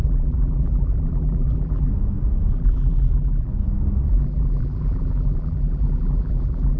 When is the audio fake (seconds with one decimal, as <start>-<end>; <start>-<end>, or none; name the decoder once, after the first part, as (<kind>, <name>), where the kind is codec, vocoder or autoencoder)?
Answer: 0.0-1.9 (vocoder, BigVGAN v2); 2.5-3.5; 4.1-6.8